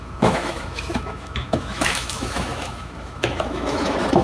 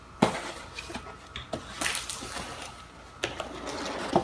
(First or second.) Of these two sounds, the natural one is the second